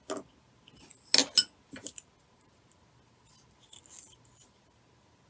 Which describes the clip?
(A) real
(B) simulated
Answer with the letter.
A